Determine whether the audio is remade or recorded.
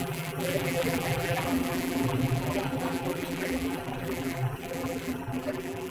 remade